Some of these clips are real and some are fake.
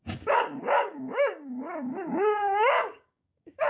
fake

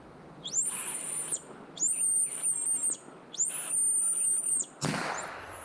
real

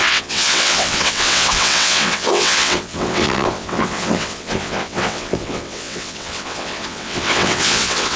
fake